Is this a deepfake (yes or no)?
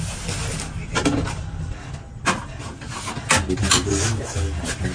no